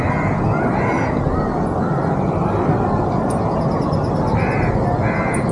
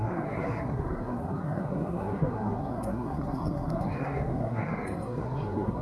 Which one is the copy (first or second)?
second